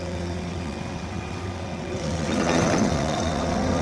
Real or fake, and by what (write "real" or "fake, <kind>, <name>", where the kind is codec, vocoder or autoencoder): fake, vocoder, WaveNeXt